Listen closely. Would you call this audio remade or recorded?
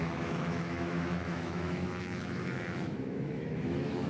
remade